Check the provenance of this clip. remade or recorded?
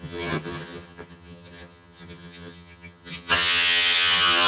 remade